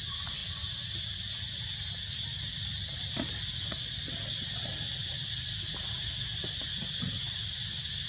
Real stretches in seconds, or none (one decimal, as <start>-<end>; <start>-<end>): 0.0-8.1